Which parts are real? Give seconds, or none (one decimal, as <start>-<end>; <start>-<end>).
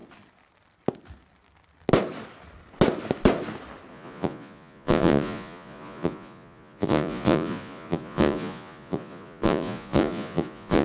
0.0-3.9